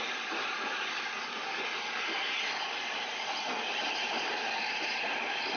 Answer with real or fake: fake